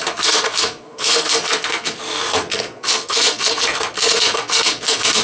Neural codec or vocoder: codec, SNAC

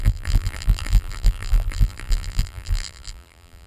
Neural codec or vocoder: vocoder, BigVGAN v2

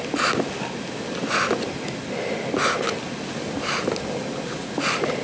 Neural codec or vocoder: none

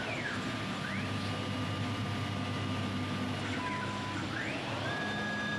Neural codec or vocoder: none